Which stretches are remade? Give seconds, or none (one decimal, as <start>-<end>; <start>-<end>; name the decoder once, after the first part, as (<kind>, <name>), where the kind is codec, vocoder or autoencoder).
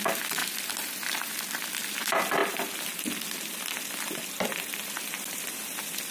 none